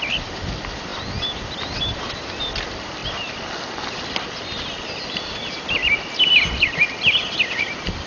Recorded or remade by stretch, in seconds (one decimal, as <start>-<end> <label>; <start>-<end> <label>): 0.0-0.9 remade; 0.9-1.4 recorded; 1.4-3.0 remade; 3.0-4.0 recorded; 4.0-5.8 remade; 5.8-6.6 recorded; 6.6-8.1 remade